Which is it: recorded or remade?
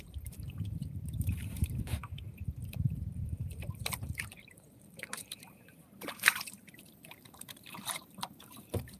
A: remade